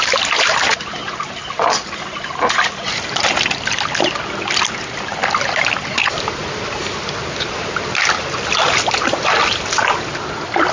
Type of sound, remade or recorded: recorded